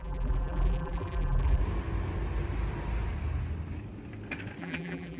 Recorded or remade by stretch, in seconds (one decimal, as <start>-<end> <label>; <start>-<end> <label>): 0.0-1.6 remade; 1.6-4.6 recorded; 4.6-5.2 remade